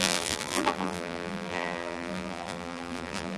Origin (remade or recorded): remade